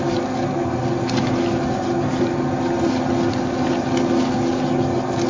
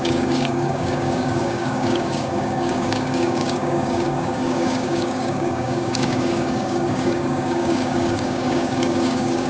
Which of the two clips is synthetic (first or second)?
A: second